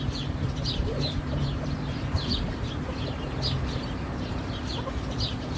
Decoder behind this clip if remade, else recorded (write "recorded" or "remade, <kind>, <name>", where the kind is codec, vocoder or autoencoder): remade, vocoder, BigVGAN v2